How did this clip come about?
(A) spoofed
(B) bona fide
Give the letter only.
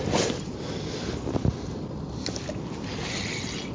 B